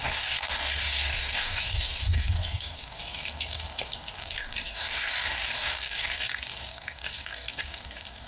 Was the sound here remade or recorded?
remade